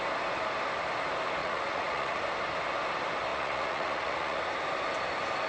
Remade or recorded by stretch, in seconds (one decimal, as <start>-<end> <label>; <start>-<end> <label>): 0.0-1.4 recorded; 1.4-2.2 remade; 2.2-3.3 recorded; 3.3-4.4 remade; 4.4-5.5 recorded

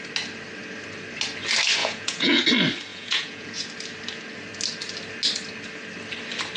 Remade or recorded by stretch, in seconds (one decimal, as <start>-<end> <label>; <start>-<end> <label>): 0.0-1.8 recorded; 1.8-2.4 remade; 2.4-2.9 recorded; 2.9-3.6 remade; 3.6-6.6 recorded

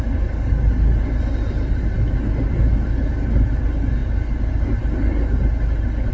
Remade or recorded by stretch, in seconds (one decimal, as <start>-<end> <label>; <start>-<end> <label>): 0.0-6.1 recorded

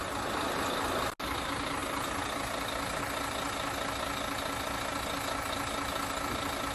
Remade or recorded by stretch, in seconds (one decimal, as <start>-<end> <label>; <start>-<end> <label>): 0.0-6.7 recorded